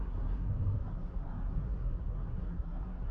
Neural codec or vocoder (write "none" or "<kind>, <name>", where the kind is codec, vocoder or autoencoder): codec, SNAC